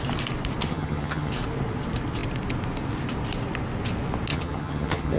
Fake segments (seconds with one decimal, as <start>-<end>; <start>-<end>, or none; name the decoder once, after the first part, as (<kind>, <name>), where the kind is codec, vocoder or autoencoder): 0.6-1.3 (vocoder, HiFi-GAN); 4.3-5.2